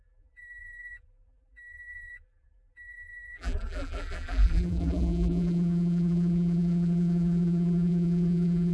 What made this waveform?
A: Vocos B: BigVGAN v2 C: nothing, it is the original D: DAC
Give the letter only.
B